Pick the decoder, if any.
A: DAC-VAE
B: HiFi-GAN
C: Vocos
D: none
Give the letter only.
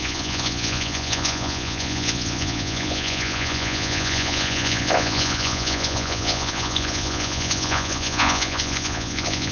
C